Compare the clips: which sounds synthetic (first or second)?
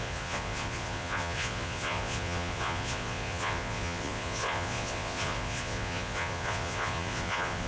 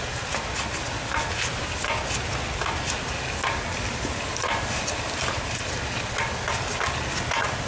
first